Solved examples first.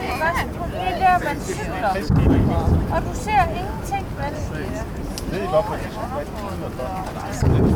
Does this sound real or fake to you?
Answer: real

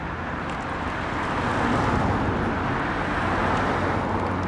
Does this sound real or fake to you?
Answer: real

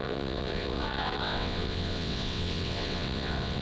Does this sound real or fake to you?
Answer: fake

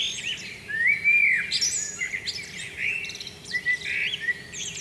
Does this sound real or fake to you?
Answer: real